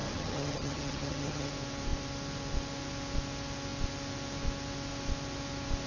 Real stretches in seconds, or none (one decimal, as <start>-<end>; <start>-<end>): 1.5-5.9